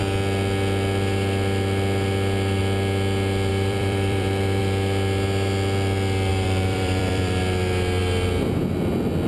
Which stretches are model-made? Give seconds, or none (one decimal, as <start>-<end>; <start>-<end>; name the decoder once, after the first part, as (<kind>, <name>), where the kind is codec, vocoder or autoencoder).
3.5-4.6 (vocoder, BigVGAN v2); 6.3-7.4